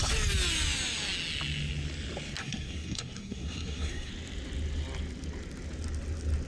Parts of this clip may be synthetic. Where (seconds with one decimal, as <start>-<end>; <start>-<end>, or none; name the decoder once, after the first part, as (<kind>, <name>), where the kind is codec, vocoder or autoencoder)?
2.4-4.1 (codec, SNAC)